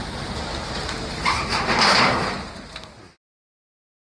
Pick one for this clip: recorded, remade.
recorded